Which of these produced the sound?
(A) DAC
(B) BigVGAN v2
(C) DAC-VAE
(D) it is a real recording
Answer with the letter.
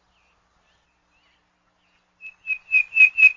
D